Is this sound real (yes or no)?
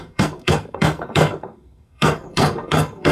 no